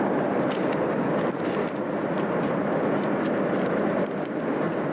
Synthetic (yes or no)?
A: no